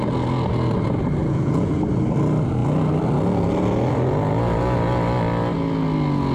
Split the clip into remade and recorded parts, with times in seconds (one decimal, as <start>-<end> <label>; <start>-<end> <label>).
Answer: 0.0-1.2 recorded; 1.2-1.8 remade; 1.8-6.3 recorded